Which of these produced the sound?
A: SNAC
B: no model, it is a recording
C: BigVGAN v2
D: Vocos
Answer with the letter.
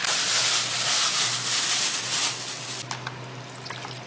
B